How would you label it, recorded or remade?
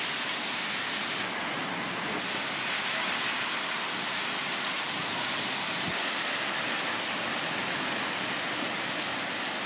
recorded